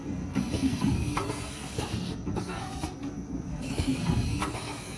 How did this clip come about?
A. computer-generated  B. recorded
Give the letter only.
A